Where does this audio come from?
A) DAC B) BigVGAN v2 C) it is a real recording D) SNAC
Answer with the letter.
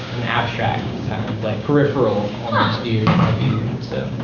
A